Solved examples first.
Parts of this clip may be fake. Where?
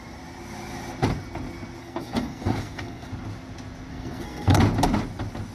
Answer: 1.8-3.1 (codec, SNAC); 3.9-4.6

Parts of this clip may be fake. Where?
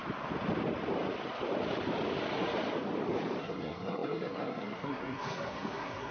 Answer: 3.4-6.1 (codec, SNAC)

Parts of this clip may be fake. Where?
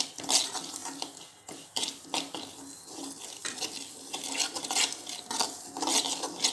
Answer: none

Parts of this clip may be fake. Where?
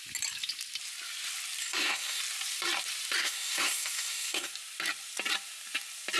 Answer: 1.6-2.2 (codec, SNAC); 3.2-4.5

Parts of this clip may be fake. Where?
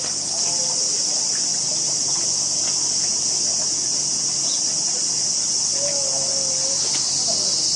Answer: none